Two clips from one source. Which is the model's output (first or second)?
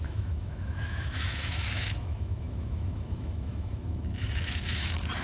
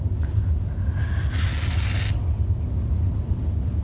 first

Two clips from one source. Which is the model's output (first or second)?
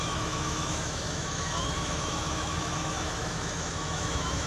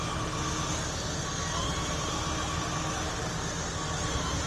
first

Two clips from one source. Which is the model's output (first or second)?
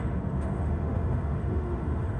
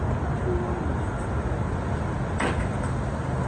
first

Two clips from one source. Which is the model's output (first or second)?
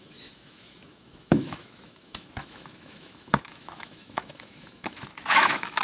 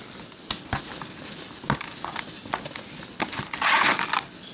first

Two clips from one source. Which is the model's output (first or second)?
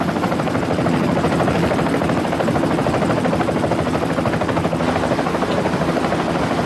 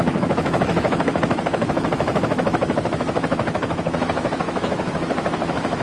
second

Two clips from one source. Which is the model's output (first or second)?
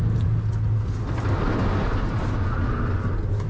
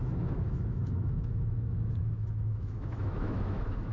second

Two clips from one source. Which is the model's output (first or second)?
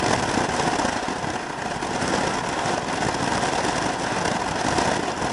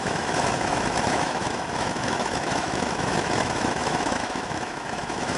second